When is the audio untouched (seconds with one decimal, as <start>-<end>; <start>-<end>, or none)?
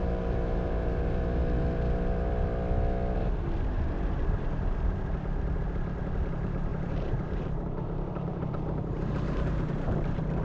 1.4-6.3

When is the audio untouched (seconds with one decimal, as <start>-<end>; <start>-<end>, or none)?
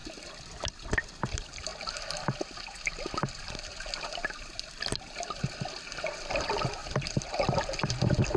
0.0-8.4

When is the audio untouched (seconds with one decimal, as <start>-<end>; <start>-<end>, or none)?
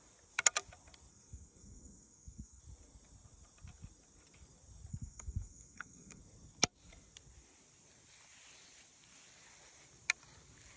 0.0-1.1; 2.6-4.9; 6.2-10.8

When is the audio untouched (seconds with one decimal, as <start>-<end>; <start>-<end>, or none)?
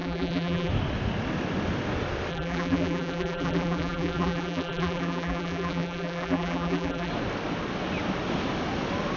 0.7-2.3; 7.1-9.2